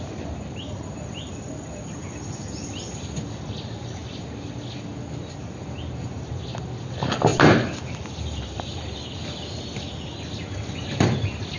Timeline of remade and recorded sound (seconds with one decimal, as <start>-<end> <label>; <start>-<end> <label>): 0.0-11.6 recorded